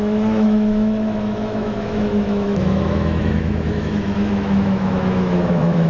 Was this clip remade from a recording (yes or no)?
yes